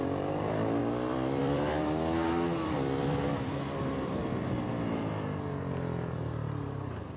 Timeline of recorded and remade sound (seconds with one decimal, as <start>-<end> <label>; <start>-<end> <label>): 0.0-4.2 remade; 4.2-7.2 recorded